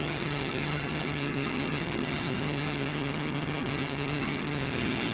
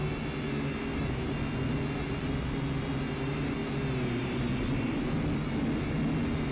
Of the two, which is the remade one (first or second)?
first